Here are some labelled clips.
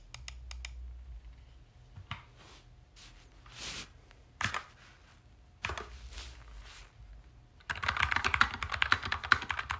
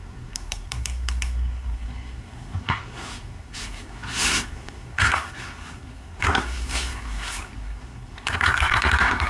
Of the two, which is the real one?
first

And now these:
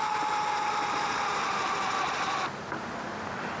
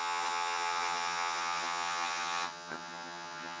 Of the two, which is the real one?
first